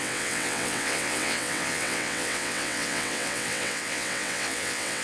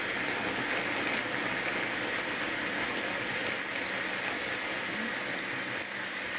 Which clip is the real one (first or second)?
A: second